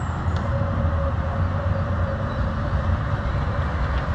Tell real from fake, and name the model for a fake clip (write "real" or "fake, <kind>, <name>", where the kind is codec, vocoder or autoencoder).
real